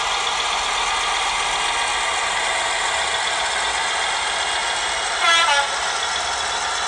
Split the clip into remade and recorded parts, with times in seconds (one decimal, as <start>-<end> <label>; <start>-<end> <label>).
0.0-6.9 recorded